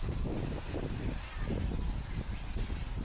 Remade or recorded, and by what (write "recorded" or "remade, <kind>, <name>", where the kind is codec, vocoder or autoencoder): recorded